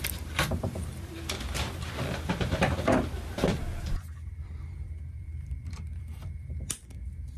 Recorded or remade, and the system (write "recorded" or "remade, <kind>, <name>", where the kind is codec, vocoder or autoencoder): remade, vocoder, BigVGAN v2